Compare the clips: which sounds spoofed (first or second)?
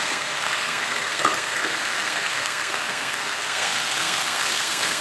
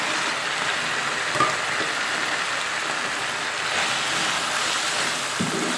first